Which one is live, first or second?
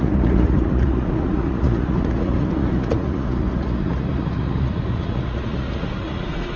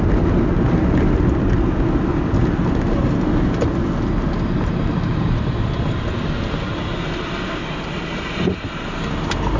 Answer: second